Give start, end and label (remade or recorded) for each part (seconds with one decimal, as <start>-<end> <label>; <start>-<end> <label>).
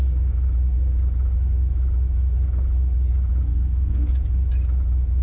0.0-3.5 recorded; 3.5-4.1 remade; 4.1-5.2 recorded